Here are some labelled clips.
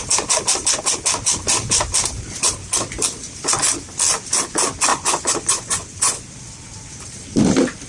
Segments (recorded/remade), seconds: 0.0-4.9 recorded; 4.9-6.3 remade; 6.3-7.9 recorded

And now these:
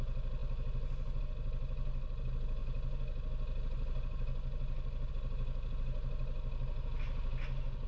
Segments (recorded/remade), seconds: 0.0-7.9 recorded

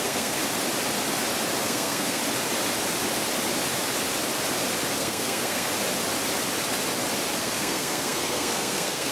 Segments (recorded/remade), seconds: 0.0-0.4 remade; 0.4-1.6 recorded; 1.6-2.2 remade; 2.2-5.0 recorded; 5.0-5.7 remade; 5.7-7.4 recorded; 7.4-9.1 remade

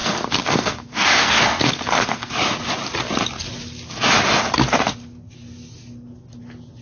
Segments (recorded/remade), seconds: 0.0-2.3 remade; 2.3-6.8 recorded

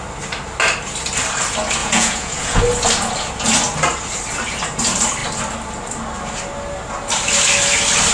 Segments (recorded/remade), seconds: 0.0-1.8 recorded; 1.8-2.6 remade; 2.6-8.1 recorded